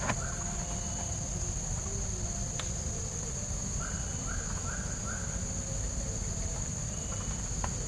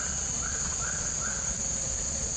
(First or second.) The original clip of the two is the first